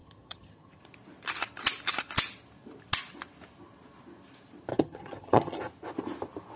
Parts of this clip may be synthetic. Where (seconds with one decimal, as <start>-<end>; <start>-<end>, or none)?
0.0-0.8; 4.7-5.6